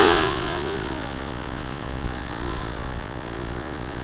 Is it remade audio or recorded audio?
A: remade